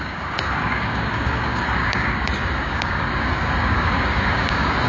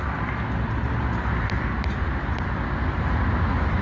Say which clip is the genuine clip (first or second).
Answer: second